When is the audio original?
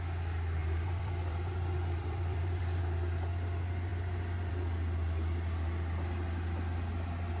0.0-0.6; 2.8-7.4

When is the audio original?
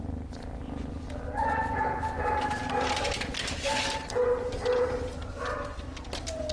0.0-6.5